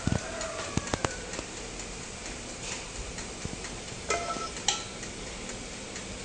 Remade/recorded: recorded